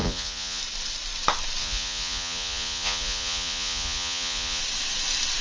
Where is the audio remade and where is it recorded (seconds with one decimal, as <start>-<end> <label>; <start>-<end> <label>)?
0.0-0.6 remade; 0.6-1.6 recorded; 1.6-4.6 remade; 4.6-5.4 recorded